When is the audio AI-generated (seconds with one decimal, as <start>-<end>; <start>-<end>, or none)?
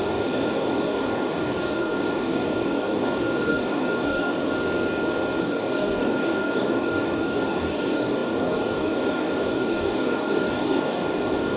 0.0-4.5; 5.4-11.6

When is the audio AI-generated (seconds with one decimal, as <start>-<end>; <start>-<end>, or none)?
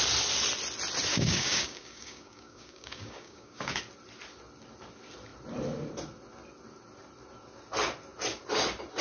1.1-3.8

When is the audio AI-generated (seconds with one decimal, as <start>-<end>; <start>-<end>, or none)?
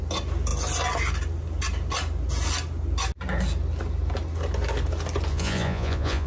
5.3-6.3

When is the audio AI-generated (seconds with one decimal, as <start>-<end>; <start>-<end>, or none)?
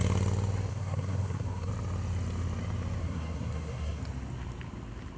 0.7-1.7; 3.0-4.0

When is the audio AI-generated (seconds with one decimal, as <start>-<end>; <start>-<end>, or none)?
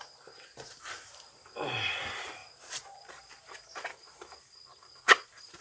none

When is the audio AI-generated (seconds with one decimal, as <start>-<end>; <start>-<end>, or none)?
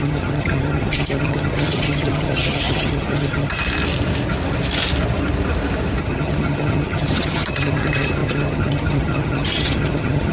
0.0-3.6; 6.0-10.3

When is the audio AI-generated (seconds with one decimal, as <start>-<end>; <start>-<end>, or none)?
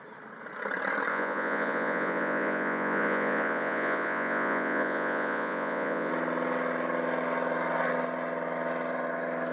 1.1-6.1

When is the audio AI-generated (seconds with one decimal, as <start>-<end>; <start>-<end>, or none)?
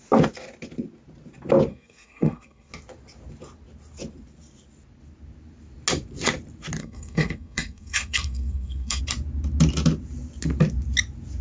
1.7-2.7; 6.8-9.0